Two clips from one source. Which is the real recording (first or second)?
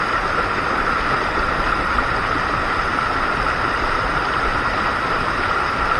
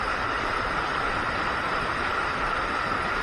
first